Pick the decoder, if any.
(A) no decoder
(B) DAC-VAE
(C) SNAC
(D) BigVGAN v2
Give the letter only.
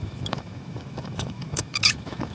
B